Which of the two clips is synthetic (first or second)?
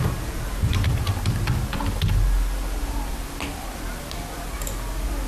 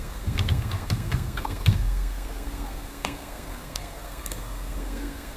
second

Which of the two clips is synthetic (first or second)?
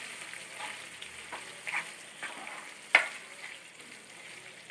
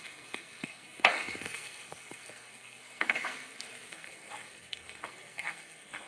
second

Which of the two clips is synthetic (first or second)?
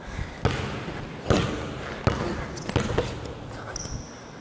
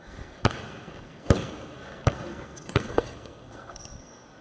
second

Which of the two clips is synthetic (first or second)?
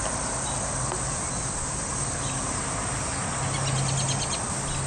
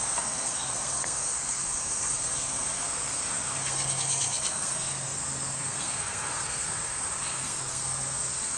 second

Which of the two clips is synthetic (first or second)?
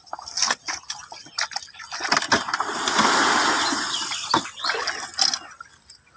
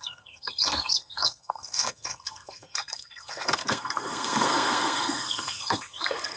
second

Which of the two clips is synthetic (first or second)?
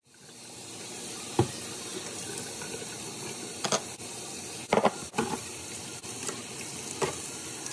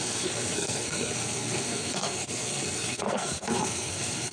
second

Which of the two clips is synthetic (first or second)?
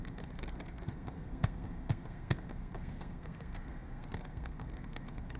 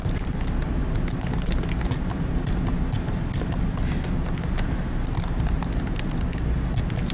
first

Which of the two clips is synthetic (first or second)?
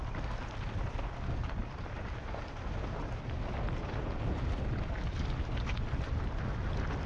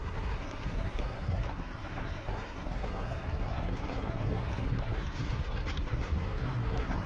second